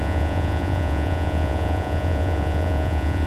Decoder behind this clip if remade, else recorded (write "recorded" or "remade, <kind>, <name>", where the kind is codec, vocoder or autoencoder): remade, vocoder, Vocos